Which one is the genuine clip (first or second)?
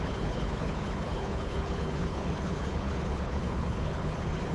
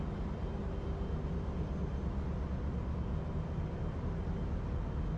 second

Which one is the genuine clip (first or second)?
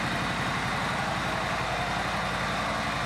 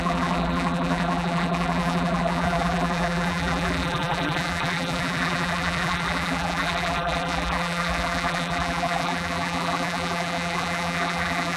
first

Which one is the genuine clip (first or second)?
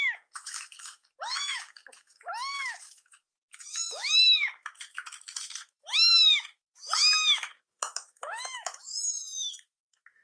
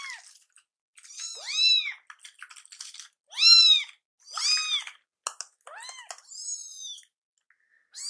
second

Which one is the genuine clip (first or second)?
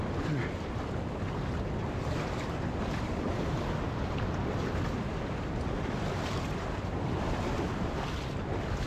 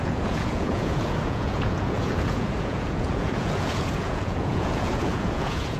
first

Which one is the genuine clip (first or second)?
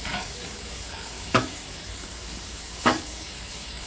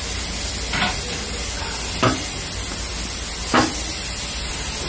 second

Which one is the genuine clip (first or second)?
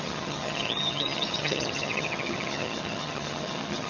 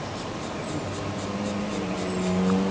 second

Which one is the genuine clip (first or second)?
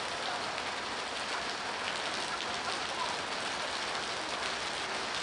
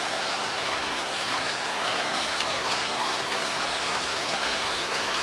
first